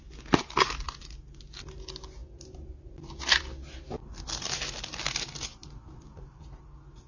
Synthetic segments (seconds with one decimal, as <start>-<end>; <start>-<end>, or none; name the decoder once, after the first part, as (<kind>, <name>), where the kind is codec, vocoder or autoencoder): 5.6-6.6 (vocoder, BigVGAN v2)